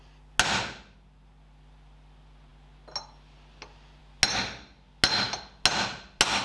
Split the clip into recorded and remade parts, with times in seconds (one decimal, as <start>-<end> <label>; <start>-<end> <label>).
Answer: 0.0-6.4 recorded

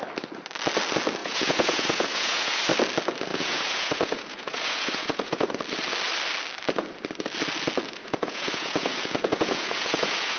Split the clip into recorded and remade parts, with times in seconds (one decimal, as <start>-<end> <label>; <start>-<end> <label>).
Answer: 0.0-1.2 recorded; 1.2-2.6 remade; 2.6-3.3 recorded; 3.3-5.5 remade; 5.5-8.0 recorded; 8.0-10.4 remade

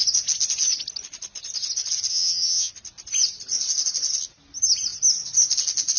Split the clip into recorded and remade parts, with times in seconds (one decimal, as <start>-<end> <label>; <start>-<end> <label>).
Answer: 0.0-2.1 recorded; 2.1-2.7 remade; 2.7-6.0 recorded

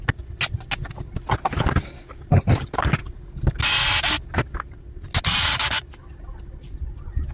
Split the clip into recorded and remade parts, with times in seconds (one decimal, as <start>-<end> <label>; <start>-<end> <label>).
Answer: 0.0-7.3 recorded

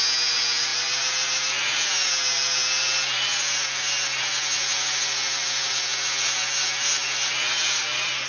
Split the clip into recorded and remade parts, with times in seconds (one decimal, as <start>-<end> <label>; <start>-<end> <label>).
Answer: 0.0-8.3 recorded

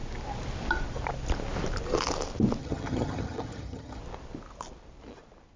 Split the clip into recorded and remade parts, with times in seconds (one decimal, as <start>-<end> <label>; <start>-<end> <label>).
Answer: 0.0-2.6 recorded; 2.6-4.0 remade; 4.0-5.6 recorded

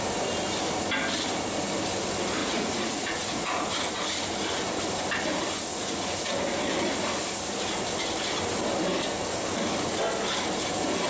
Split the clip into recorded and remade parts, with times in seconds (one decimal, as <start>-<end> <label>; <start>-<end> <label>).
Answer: 0.0-2.4 recorded; 2.4-3.7 remade; 3.7-5.7 recorded; 5.7-6.3 remade; 6.3-11.1 recorded

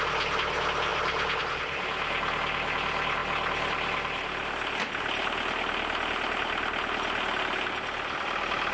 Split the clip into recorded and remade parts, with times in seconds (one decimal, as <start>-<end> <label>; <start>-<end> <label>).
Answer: 0.0-8.7 recorded